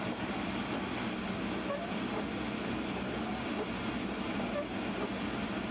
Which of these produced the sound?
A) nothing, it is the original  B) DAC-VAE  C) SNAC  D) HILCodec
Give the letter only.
A